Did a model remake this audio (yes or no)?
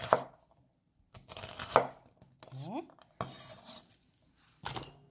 no